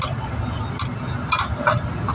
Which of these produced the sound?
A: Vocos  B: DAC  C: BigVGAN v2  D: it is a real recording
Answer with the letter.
D